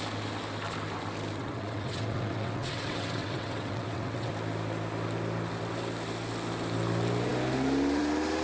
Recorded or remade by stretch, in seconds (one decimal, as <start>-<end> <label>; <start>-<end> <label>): 0.0-1.4 recorded; 1.4-4.3 remade; 4.3-8.4 recorded